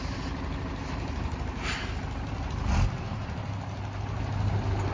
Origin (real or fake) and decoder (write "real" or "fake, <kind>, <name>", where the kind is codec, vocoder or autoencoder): real